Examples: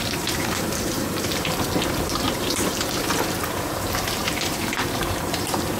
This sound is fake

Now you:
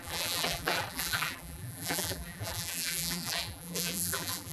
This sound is fake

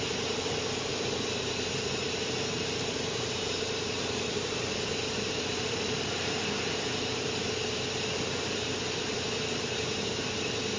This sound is fake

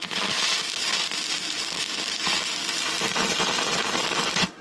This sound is real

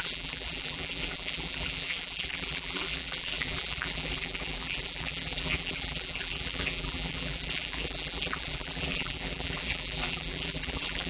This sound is fake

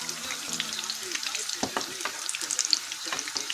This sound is real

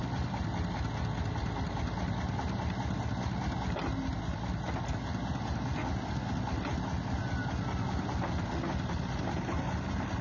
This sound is real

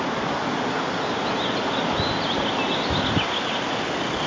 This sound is real